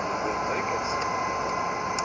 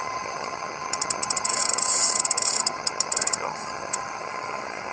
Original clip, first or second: first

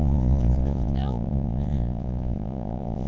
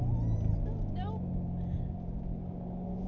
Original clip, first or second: second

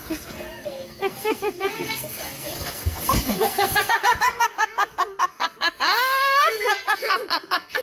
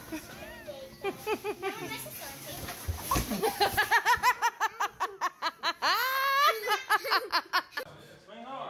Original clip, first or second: second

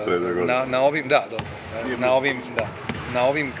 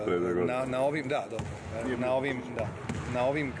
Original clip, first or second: second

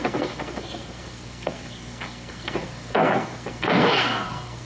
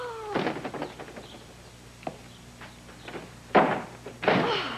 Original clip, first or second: second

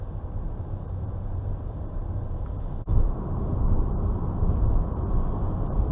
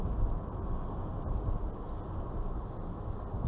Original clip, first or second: second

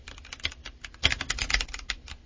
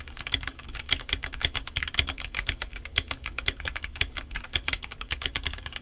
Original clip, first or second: first